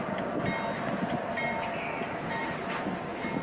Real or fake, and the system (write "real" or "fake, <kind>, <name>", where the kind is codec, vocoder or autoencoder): real